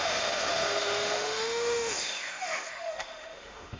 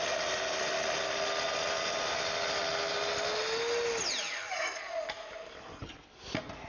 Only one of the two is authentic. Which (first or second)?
second